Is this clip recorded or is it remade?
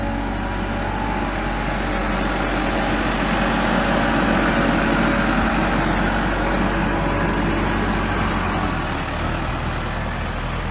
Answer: recorded